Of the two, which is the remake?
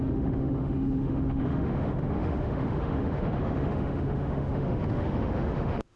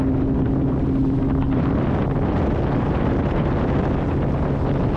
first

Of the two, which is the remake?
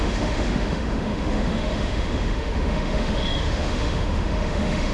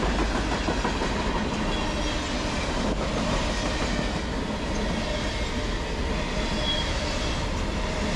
first